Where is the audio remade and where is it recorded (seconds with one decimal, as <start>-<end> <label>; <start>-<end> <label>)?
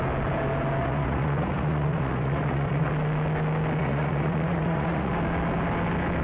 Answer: 0.0-0.8 recorded; 0.8-2.9 remade; 2.9-3.8 recorded; 3.8-5.1 remade; 5.1-6.2 recorded